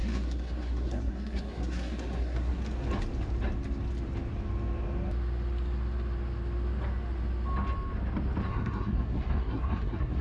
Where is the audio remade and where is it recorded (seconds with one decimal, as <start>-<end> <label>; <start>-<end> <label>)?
0.0-2.6 remade; 2.6-8.5 recorded; 8.5-10.2 remade